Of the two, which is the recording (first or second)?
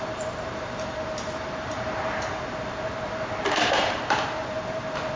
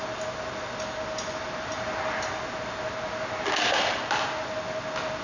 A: second